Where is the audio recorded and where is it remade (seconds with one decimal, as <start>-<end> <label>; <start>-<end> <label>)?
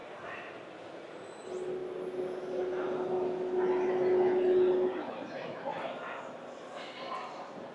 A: 0.0-7.7 recorded